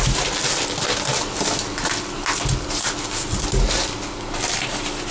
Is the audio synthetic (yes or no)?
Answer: no